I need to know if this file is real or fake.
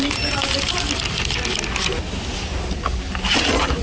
real